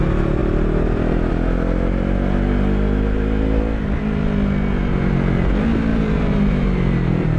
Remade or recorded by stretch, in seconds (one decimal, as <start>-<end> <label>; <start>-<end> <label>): 0.0-5.9 recorded; 5.9-7.4 remade